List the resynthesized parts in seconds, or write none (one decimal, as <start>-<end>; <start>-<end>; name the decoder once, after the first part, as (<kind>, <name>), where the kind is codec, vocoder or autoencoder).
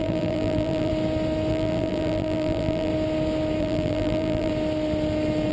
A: 0.0-0.9 (vocoder, BigVGAN v2); 1.5-2.9; 3.6-4.5